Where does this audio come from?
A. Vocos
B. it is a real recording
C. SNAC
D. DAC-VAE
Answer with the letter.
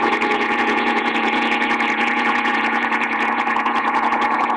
A